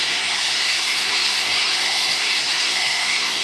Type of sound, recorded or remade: remade